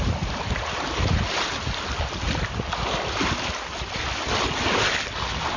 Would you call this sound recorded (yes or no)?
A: yes